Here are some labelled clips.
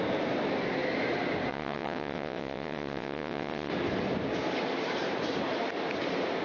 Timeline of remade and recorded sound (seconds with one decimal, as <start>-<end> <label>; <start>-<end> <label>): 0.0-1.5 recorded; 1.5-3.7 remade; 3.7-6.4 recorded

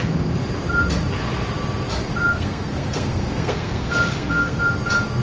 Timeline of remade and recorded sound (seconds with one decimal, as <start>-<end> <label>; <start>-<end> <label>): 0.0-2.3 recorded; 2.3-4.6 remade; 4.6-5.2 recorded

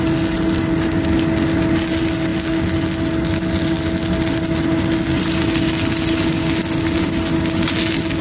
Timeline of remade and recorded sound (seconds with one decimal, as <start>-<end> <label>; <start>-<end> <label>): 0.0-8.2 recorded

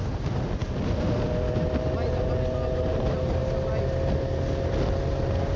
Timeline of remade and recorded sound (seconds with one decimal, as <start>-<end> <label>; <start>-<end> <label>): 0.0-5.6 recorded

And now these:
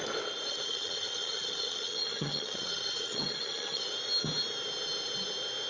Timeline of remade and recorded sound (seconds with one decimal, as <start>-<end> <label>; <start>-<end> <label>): 0.0-0.5 recorded; 0.5-3.9 remade; 3.9-5.7 recorded

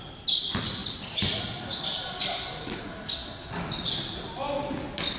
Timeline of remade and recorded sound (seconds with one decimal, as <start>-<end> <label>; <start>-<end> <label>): 0.0-5.2 recorded

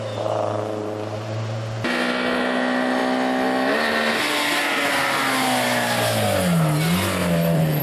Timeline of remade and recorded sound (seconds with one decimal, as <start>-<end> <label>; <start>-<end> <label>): 0.0-7.2 recorded; 7.2-7.8 remade

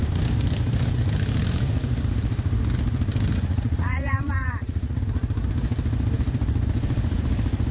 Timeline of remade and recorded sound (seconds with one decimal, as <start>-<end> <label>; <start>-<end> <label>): 0.0-3.3 recorded; 3.3-5.0 remade; 5.0-7.7 recorded